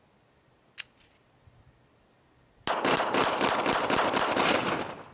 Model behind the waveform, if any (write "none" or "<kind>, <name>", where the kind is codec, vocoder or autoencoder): none